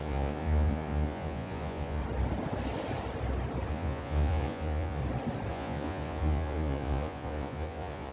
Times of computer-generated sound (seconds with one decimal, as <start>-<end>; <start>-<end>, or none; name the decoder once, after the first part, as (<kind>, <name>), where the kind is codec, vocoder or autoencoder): 0.0-2.0 (vocoder, Vocos); 3.7-5.0; 5.5-8.1